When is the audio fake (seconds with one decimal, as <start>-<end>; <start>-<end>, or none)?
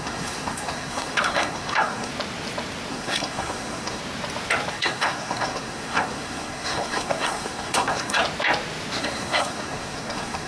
0.0-2.1; 2.9-4.0; 4.7-8.2; 9.0-10.5